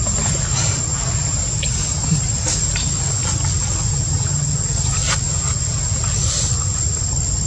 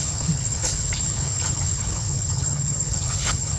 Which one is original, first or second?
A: first